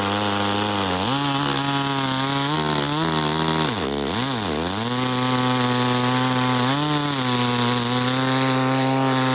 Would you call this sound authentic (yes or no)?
yes